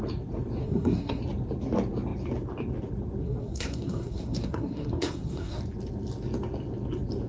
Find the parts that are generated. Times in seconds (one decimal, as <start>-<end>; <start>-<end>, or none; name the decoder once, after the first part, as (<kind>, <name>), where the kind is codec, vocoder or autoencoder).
0.6-1.2 (codec, SNAC); 3.2-5.6